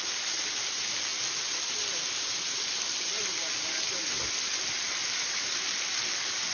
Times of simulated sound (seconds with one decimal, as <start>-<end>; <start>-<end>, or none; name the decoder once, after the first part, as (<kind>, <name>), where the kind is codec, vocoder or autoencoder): none